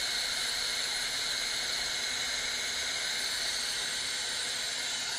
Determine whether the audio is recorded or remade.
remade